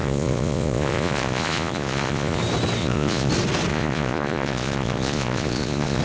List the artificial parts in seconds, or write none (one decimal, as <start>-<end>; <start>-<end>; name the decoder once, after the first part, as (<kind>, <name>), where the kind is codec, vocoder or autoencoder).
0.0-2.4 (vocoder, Vocos); 2.8-3.3; 3.7-6.0